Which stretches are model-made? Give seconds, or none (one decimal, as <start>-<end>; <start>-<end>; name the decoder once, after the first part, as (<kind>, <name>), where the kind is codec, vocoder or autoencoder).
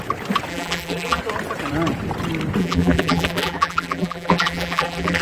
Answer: 0.5-1.2 (vocoder, BigVGAN v2); 2.6-5.2